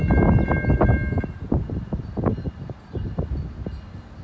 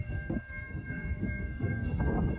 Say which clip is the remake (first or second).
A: second